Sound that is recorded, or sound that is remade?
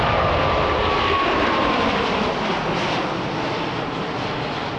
recorded